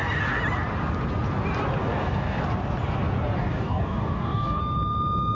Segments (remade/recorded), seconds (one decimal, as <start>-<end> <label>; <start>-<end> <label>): 0.0-1.8 recorded; 1.8-2.4 remade; 2.4-3.4 recorded; 3.4-4.6 remade; 4.6-5.3 recorded